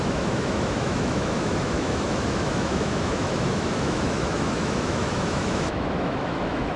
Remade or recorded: remade